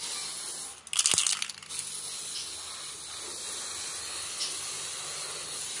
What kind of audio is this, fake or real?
real